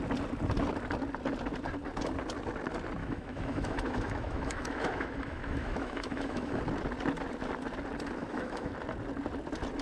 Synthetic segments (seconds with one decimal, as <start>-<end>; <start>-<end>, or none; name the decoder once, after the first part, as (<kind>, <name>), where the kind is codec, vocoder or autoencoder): 3.0-6.6 (autoencoder, DAC-VAE); 8.2-8.7